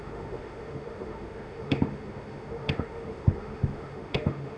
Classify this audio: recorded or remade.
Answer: remade